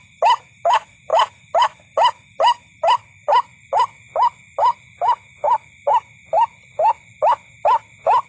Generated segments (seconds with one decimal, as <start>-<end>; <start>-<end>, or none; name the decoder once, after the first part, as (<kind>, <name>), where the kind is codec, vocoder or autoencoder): none